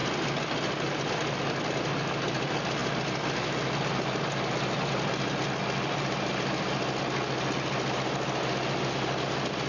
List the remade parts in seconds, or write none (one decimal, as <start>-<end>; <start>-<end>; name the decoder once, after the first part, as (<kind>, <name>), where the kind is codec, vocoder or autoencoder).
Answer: none